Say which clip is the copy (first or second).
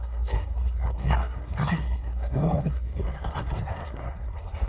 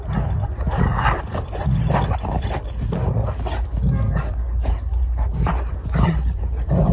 first